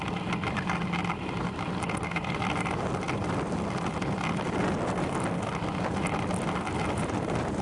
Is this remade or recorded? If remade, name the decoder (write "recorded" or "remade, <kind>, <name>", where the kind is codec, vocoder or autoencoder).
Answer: recorded